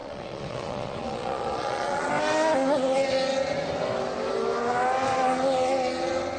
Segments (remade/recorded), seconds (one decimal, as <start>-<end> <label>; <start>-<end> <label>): 0.0-2.1 remade; 2.1-6.4 recorded